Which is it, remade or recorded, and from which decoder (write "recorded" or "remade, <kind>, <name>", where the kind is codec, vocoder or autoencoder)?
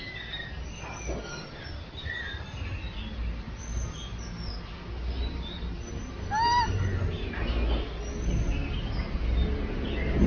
recorded